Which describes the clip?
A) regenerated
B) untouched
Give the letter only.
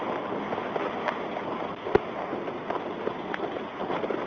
B